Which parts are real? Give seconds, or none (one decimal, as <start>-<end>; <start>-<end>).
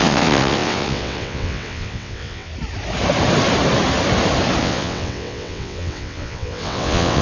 2.5-4.6